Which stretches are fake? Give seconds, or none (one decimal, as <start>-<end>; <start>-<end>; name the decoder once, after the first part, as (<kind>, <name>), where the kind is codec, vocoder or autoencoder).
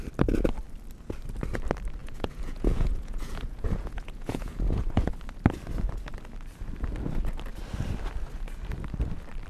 2.0-5.1 (vocoder, Vocos)